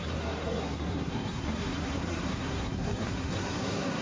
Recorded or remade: remade